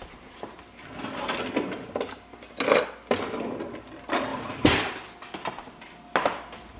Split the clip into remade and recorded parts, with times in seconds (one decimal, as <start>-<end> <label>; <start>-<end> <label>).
0.0-4.3 recorded; 4.3-4.9 remade; 4.9-6.8 recorded